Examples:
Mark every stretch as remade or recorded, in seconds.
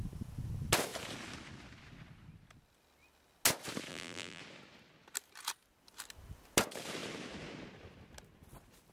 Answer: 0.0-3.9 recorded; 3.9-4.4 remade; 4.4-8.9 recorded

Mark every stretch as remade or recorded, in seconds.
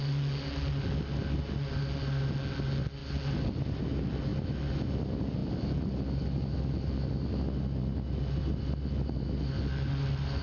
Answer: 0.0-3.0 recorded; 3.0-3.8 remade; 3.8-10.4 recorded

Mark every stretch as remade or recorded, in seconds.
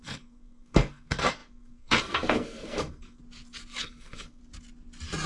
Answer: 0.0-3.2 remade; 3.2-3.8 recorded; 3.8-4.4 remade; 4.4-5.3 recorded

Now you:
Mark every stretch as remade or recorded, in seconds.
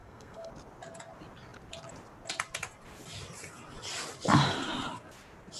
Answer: 0.0-0.5 remade; 0.5-5.6 recorded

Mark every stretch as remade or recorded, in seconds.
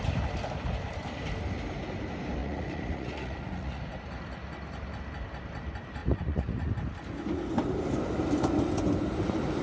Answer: 0.0-2.4 recorded; 2.4-3.8 remade; 3.8-6.0 recorded; 6.0-6.7 remade; 6.7-9.6 recorded